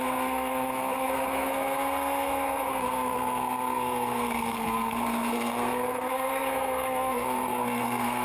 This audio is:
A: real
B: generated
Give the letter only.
B